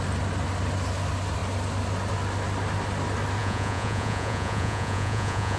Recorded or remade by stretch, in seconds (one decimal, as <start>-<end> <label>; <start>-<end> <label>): 0.0-3.4 recorded; 3.4-5.6 remade